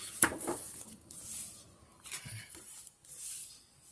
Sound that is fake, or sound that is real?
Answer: real